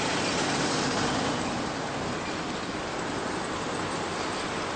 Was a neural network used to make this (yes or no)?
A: no